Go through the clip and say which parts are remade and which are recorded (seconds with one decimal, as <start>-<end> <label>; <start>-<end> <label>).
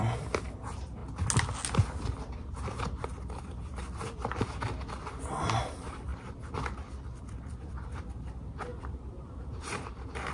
0.0-8.7 recorded; 8.7-10.3 remade